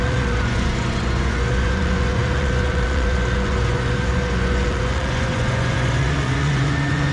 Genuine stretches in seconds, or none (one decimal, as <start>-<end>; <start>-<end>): none